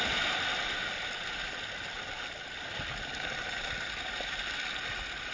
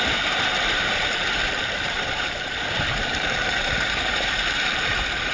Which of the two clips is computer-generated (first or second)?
second